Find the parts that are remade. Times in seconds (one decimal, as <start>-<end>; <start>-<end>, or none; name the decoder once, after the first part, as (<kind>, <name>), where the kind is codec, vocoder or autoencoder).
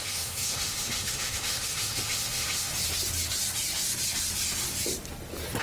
0.0-2.7 (autoencoder, DAC-VAE)